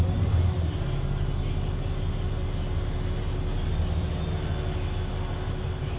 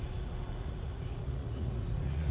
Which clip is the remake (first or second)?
second